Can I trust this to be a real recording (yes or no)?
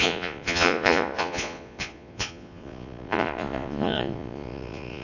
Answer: no